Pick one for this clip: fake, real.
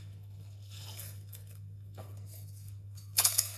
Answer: fake